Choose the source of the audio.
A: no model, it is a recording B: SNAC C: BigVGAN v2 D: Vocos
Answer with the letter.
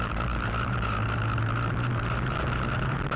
C